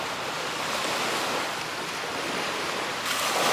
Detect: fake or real fake